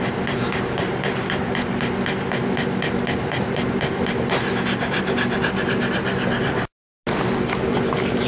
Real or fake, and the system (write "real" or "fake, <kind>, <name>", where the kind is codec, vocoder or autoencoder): real